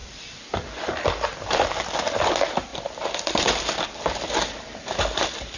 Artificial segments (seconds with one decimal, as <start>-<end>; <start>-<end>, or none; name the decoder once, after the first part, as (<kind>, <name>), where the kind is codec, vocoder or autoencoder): 0.0-2.3 (vocoder, BigVGAN v2); 2.7-5.6